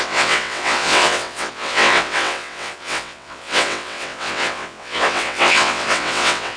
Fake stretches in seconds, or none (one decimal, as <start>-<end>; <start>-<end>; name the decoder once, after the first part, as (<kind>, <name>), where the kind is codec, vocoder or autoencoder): 0.0-6.6 (vocoder, WaveNeXt)